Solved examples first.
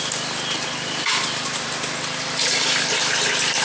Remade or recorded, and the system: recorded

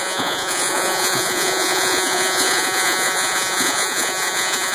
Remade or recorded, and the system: remade, vocoder, Vocos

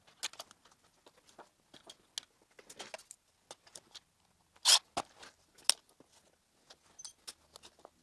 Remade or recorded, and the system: recorded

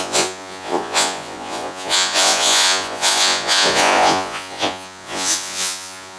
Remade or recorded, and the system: remade, vocoder, Vocos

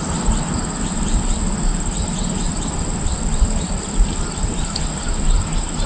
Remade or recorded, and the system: recorded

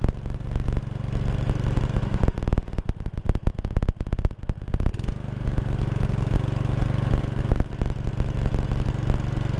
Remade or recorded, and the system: recorded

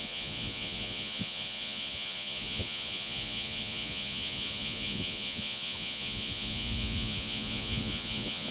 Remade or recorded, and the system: remade, vocoder, Vocos